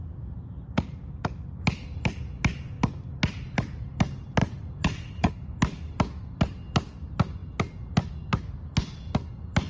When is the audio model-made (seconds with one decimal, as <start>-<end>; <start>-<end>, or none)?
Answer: 4.4-5.3

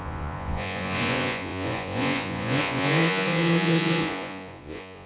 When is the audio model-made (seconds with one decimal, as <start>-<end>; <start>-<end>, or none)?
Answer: 0.0-5.1

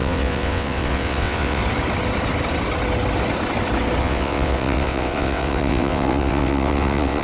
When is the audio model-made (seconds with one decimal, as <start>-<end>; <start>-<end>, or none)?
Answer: 0.0-1.6; 4.0-7.2

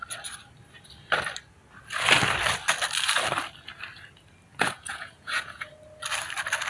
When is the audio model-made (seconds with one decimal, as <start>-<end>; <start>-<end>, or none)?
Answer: 4.5-5.7

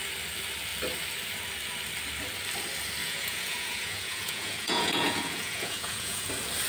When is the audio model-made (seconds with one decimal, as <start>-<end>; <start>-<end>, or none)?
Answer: 3.0-6.3

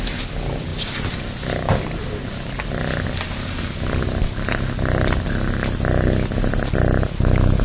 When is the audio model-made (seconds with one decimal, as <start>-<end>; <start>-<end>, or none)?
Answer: none

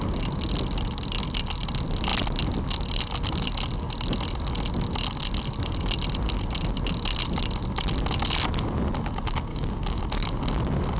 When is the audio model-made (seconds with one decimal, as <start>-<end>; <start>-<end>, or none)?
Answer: 9.5-10.0

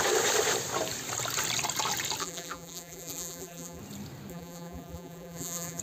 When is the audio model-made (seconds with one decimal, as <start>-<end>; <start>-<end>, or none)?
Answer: 2.2-3.8; 4.3-5.8